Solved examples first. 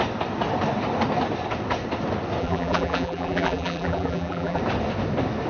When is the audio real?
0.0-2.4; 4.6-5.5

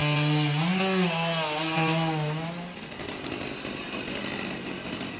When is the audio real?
0.0-5.2